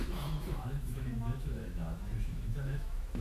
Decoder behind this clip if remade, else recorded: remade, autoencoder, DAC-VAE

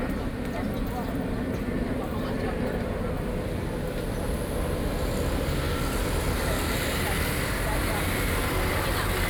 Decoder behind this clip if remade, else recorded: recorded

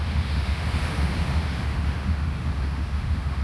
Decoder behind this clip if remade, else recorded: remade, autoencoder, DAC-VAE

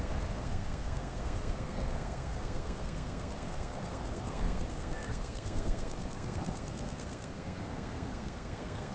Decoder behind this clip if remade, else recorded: remade, codec, SNAC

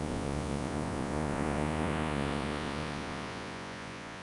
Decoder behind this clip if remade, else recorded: remade, vocoder, Vocos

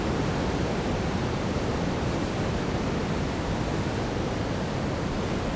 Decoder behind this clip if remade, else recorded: recorded